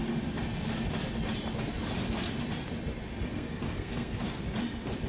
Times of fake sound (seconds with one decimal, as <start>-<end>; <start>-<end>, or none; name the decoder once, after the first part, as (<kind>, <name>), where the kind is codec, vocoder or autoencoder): 3.3-4.4 (codec, SNAC)